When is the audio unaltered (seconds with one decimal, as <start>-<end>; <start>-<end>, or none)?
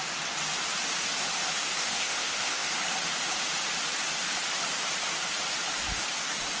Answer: 0.0-1.8; 2.7-6.6